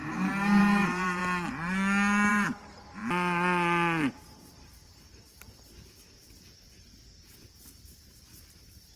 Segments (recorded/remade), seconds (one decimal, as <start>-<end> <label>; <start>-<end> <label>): 0.0-1.2 remade; 1.2-2.3 recorded; 2.3-3.0 remade; 3.0-4.1 recorded; 4.1-9.0 remade